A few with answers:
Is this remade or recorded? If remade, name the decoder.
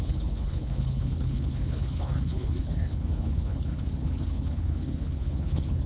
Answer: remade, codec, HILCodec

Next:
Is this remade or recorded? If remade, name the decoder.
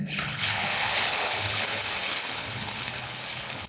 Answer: remade, codec, HILCodec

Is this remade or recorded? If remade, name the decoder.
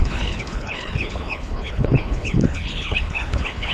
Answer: remade, codec, HILCodec